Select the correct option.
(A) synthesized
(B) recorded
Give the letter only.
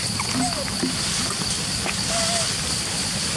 B